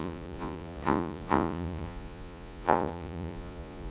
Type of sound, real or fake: fake